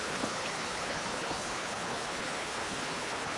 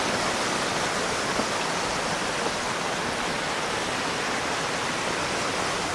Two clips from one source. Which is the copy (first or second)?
first